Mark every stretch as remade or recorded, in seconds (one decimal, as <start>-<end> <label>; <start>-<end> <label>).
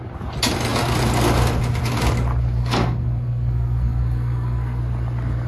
0.0-2.6 recorded; 2.6-4.8 remade; 4.8-5.5 recorded